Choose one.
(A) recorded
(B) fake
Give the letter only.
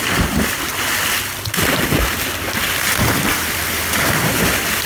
A